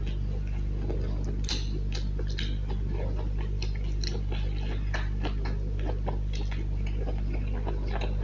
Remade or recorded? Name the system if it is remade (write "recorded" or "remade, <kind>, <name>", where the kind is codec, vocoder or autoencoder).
recorded